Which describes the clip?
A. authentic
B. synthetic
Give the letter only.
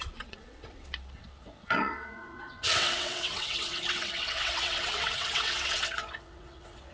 B